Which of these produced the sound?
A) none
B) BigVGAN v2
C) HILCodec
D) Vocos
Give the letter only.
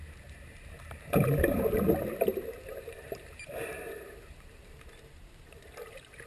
B